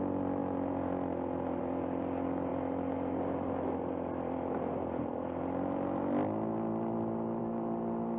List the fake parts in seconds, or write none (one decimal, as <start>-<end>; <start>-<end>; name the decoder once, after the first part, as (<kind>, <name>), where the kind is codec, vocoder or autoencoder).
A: 2.5-7.4 (vocoder, BigVGAN v2)